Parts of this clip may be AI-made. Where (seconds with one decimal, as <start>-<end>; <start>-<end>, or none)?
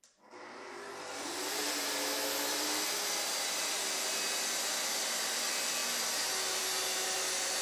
none